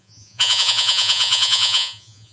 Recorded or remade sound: remade